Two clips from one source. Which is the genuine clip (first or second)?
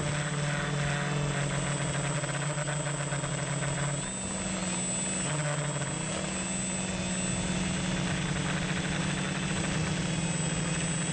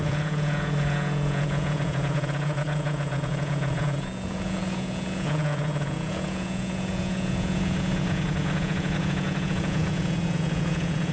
first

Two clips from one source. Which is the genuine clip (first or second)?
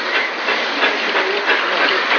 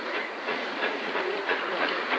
first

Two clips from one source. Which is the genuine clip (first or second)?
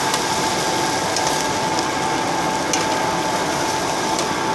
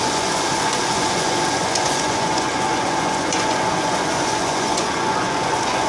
first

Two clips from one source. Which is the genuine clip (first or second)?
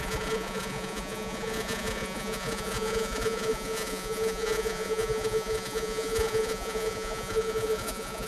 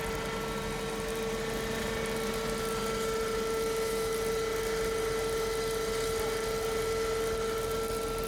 second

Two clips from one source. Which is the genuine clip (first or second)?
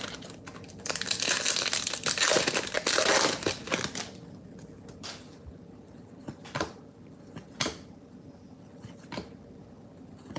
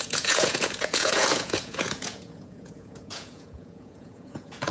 first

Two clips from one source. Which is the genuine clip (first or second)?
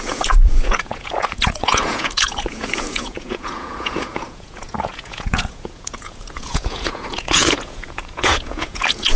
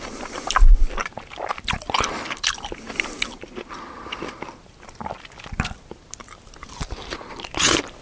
second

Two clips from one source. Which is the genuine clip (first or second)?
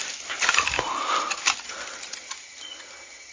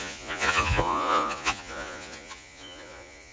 first